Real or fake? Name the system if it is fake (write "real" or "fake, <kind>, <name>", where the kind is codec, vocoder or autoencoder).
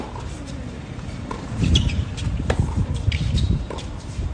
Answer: fake, vocoder, BigVGAN v2